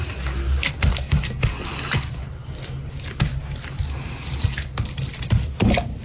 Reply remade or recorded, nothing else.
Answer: recorded